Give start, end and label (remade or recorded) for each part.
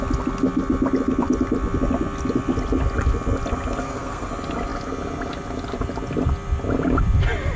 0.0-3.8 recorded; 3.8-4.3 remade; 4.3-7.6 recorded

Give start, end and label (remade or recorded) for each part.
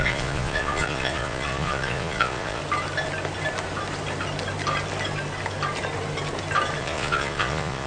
0.0-2.6 remade; 2.6-6.8 recorded; 6.8-7.9 remade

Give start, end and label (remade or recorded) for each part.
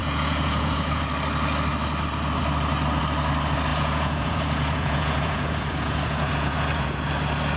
0.0-1.0 remade; 1.0-3.7 recorded; 3.7-7.1 remade; 7.1-7.6 recorded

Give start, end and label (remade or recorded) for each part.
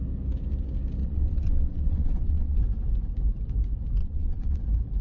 0.0-1.0 recorded; 1.0-2.6 remade; 2.6-4.0 recorded; 4.0-4.6 remade; 4.6-5.0 recorded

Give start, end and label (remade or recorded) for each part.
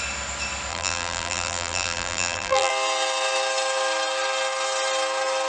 0.0-0.7 recorded; 0.7-2.7 remade; 2.7-5.5 recorded